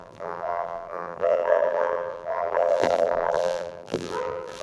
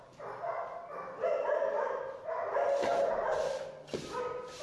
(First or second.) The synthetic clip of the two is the first